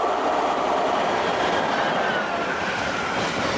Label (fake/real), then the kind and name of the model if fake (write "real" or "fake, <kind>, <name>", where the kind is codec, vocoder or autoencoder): real